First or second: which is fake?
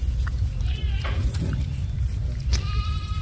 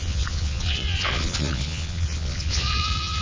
second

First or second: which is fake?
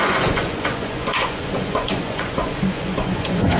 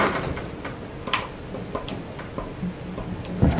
first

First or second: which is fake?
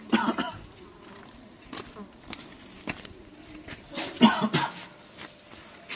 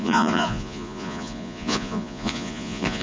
second